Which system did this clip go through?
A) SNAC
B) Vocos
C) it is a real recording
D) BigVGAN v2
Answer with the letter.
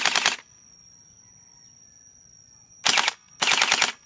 C